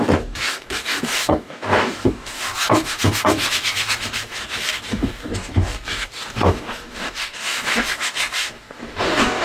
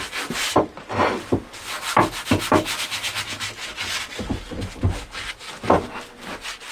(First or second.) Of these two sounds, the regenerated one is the first